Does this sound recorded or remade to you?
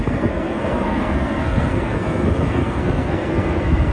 remade